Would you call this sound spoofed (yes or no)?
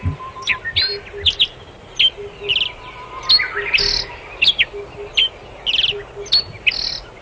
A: no